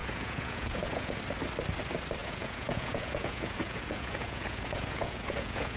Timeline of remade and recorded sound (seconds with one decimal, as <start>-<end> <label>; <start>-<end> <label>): 0.0-1.2 remade; 1.2-2.2 recorded; 2.2-5.8 remade